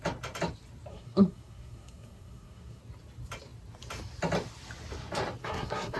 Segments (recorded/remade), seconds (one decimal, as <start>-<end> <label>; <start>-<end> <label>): 0.0-0.9 recorded; 0.9-2.8 remade; 2.8-5.4 recorded; 5.4-6.0 remade